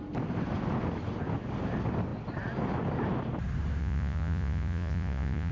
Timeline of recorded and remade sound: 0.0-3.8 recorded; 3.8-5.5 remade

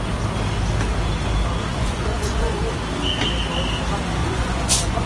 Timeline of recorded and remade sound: 0.0-1.7 recorded; 1.7-2.6 remade; 2.6-4.2 recorded; 4.2-5.1 remade

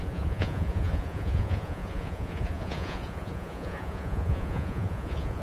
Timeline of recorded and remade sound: 0.0-5.4 remade

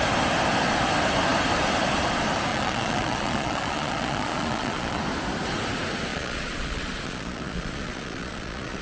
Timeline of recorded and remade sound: 0.0-2.5 recorded; 2.5-5.0 remade; 5.0-6.1 recorded; 6.1-8.8 remade

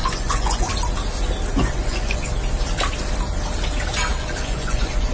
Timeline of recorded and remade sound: 0.0-0.7 remade; 0.7-1.6 recorded; 1.6-2.3 remade; 2.3-4.1 recorded; 4.1-5.1 remade

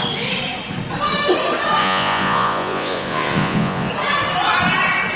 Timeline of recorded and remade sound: 0.0-1.8 recorded; 1.8-3.9 remade; 3.9-5.2 recorded